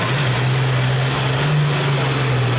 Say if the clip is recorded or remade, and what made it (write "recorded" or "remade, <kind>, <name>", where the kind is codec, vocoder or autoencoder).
recorded